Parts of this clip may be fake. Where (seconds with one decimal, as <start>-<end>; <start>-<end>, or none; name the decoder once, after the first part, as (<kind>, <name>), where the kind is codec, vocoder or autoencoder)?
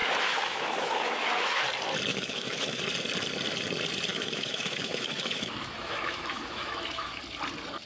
0.0-1.6 (autoencoder, DAC-VAE); 2.1-2.8; 4.1-7.2